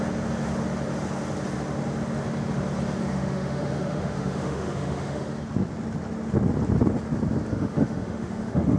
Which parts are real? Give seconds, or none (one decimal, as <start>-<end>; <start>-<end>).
0.0-3.0; 5.2-7.5